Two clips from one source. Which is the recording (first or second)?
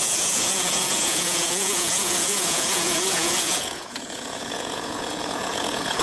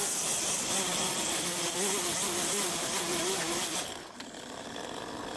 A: second